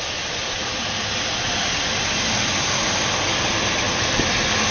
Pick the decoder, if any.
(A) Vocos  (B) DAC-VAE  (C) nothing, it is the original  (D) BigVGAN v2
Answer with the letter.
C